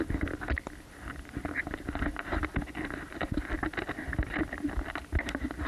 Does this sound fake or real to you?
real